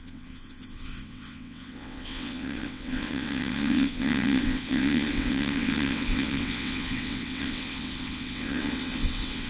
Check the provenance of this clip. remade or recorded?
remade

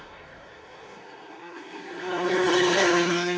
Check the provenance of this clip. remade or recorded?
remade